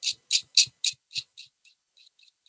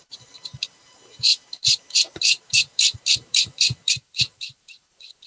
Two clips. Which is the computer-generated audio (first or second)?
second